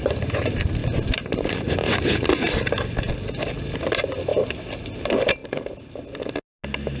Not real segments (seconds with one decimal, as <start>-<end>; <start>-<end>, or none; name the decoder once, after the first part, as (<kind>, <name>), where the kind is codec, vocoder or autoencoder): 0.8-1.7 (vocoder, BigVGAN v2)